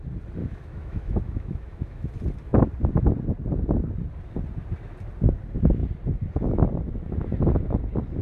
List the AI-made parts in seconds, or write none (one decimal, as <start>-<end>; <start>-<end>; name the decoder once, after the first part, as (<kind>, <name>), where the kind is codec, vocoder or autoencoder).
0.4-2.1 (autoencoder, DAC-VAE)